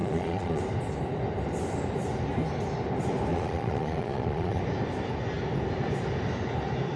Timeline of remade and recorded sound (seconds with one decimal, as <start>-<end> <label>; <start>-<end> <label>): 0.0-0.6 remade; 0.6-3.3 recorded; 3.3-4.6 remade; 4.6-7.0 recorded

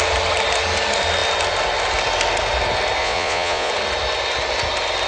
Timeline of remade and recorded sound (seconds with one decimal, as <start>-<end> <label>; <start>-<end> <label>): 0.0-3.0 recorded; 3.0-3.7 remade; 3.7-5.1 recorded

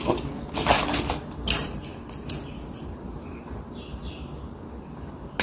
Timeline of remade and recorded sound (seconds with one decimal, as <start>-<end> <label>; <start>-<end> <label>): 0.0-5.4 recorded

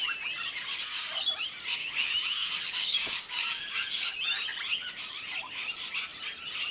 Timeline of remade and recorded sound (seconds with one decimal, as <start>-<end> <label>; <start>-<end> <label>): 0.0-1.8 recorded; 1.8-4.1 remade; 4.1-6.7 recorded